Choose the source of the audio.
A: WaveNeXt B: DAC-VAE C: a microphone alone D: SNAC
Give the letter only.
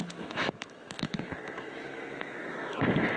B